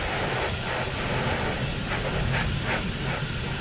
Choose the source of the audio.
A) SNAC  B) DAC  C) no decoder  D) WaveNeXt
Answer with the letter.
C